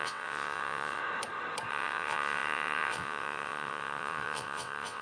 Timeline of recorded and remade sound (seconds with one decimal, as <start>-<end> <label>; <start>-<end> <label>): 0.0-1.0 remade; 1.0-1.7 recorded; 1.7-5.0 remade